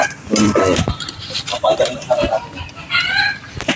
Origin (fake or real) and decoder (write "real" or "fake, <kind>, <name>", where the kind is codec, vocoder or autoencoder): real